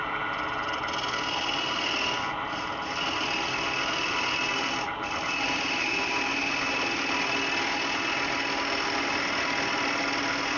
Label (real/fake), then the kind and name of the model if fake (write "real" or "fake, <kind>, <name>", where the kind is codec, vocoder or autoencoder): real